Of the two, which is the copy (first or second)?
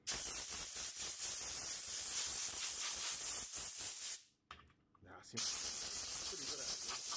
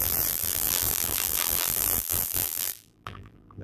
second